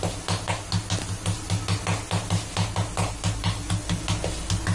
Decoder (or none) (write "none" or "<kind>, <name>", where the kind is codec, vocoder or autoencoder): none